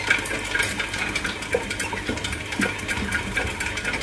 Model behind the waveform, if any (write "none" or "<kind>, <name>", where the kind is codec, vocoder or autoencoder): none